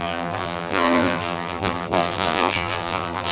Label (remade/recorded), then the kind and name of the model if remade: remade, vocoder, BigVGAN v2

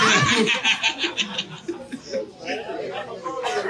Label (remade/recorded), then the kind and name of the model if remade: recorded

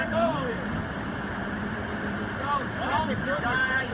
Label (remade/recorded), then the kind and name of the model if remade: remade, vocoder, BigVGAN v2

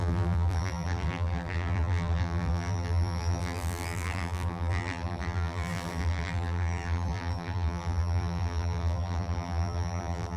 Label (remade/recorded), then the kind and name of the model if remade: remade, vocoder, BigVGAN v2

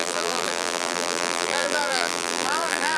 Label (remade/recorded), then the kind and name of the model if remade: remade, vocoder, BigVGAN v2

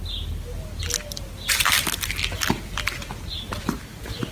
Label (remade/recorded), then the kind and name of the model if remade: recorded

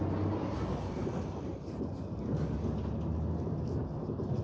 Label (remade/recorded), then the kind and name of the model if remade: recorded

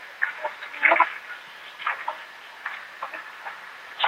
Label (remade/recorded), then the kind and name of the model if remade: recorded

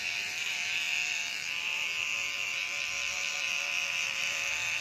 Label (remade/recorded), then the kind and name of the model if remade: remade, vocoder, BigVGAN v2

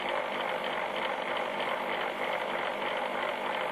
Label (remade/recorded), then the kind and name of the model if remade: recorded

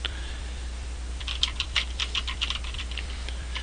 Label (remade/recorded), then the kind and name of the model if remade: remade, vocoder, BigVGAN v2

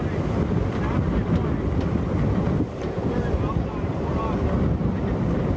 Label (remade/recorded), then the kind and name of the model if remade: recorded